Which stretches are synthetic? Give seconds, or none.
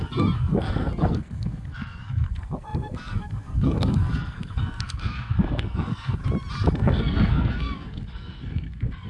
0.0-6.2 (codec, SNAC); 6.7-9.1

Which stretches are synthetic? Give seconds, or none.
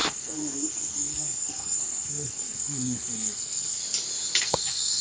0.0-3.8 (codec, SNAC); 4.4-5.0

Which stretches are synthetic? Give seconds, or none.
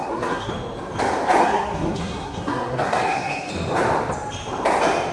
0.0-0.5 (codec, SNAC); 1.4-3.5